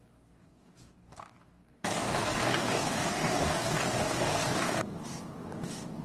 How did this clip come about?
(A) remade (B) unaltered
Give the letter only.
A